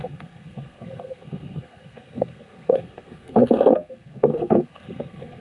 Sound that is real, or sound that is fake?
fake